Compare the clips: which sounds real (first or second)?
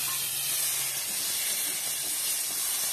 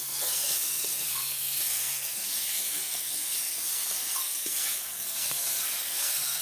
first